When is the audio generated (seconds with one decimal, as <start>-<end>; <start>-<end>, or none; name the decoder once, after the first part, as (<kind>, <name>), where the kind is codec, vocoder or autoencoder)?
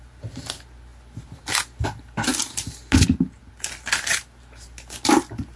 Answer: none